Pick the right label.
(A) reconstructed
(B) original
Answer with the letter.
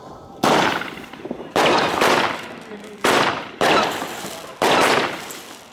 A